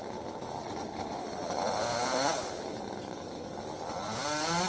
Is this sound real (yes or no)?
yes